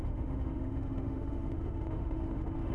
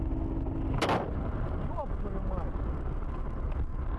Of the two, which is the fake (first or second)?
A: first